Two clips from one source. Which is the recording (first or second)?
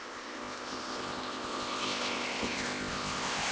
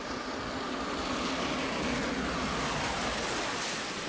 second